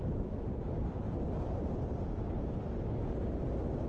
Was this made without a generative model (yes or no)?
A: yes